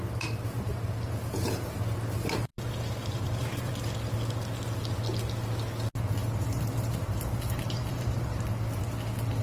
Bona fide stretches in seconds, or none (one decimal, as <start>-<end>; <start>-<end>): 0.0-2.5; 3.7-6.2; 8.4-9.4